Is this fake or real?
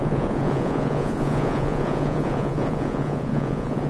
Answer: fake